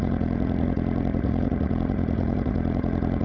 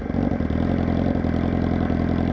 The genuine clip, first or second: second